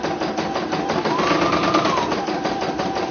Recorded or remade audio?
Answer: recorded